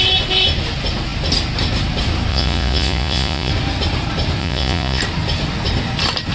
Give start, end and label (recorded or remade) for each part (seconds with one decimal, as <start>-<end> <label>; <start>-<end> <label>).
0.0-2.3 recorded; 2.3-3.5 remade; 3.5-4.4 recorded; 4.4-5.0 remade; 5.0-6.3 recorded